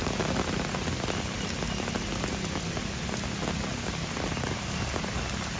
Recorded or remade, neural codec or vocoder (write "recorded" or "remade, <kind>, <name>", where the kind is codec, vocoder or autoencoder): recorded